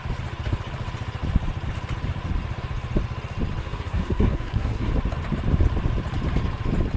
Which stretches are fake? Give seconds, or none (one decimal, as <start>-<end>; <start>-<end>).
3.6-4.9